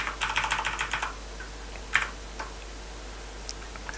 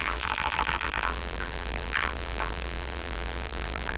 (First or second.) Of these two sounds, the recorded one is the first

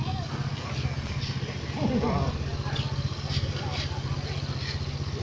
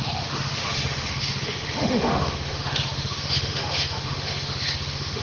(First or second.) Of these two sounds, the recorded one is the first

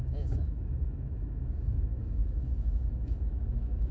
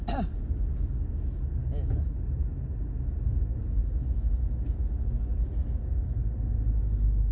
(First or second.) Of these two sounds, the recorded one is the second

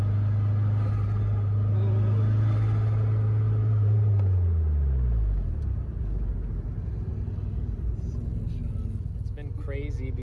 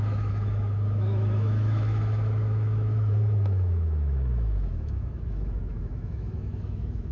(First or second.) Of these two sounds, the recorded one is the first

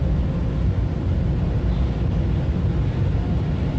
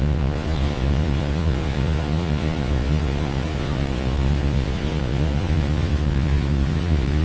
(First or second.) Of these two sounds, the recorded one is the first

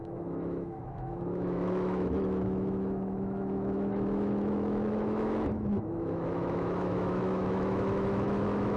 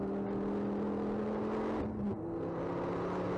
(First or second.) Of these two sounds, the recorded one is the second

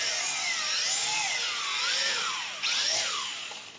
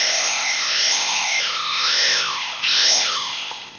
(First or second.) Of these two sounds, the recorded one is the first